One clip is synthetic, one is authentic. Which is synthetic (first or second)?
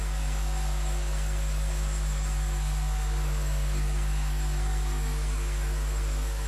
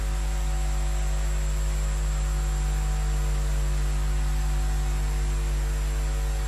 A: first